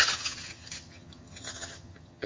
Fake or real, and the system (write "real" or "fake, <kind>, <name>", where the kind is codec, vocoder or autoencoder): fake, vocoder, HiFi-GAN